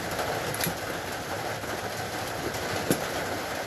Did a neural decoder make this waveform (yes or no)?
no